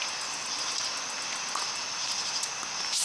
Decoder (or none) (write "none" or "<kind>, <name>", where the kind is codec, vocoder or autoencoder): none